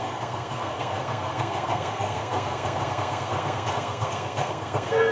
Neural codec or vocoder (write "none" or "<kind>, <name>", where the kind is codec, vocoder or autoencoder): codec, SNAC